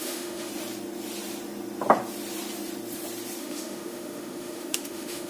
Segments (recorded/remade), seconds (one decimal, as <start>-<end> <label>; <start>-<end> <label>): 0.0-0.5 remade; 0.5-3.4 recorded; 3.4-5.3 remade